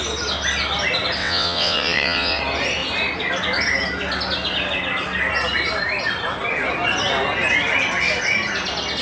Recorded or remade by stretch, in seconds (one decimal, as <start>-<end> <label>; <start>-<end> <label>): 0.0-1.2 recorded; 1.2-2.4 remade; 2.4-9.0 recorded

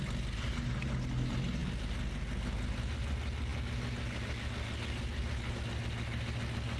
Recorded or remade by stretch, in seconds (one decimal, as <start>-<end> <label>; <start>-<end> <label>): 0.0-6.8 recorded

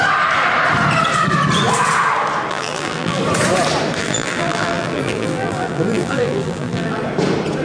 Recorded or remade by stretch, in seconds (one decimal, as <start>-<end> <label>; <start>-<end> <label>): 0.0-2.5 recorded; 2.5-3.2 remade; 3.2-4.0 recorded; 4.0-7.0 remade; 7.0-7.6 recorded

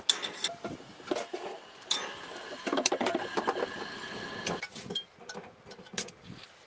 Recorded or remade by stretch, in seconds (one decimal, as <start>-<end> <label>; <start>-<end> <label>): 0.0-6.7 recorded

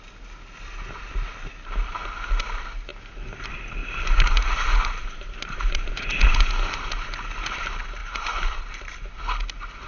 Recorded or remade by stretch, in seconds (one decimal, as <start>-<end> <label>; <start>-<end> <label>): 0.0-3.8 recorded; 3.8-5.9 remade; 5.9-8.0 recorded; 8.0-9.2 remade; 9.2-9.9 recorded

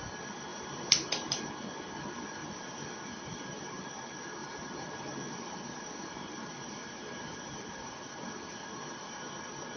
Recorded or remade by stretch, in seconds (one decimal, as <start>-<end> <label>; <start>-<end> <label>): 0.0-0.5 recorded; 0.5-1.5 remade; 1.5-2.4 recorded; 2.4-2.9 remade; 2.9-3.3 recorded; 3.3-3.8 remade; 3.8-4.4 recorded; 4.4-9.3 remade; 9.3-9.8 recorded